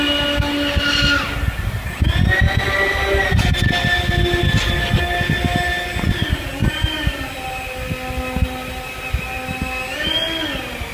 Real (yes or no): yes